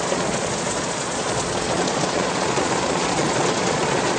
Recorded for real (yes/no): no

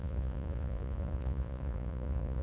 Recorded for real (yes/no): no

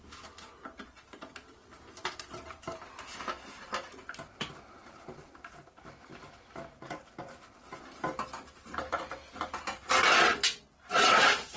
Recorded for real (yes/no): yes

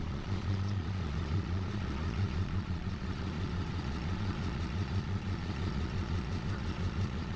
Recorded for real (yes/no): no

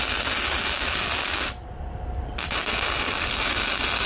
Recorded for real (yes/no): yes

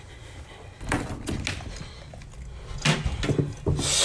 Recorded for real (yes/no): yes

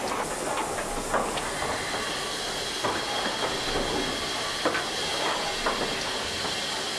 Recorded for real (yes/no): yes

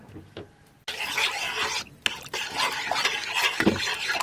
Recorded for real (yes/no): yes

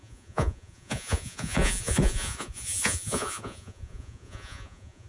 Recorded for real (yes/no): no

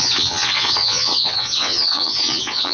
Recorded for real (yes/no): no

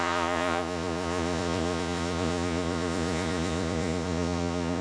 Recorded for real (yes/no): no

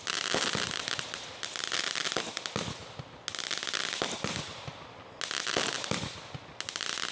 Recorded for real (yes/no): yes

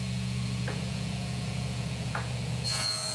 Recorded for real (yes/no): no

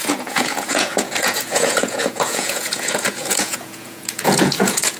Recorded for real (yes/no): no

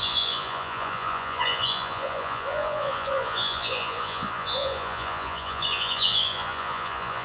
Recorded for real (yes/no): no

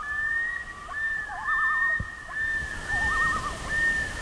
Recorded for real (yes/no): yes